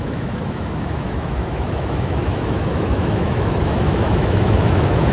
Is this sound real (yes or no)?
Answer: no